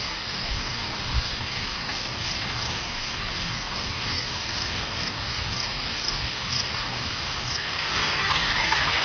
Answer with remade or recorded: remade